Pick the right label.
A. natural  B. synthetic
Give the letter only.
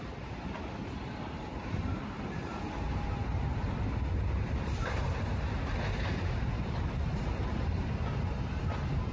B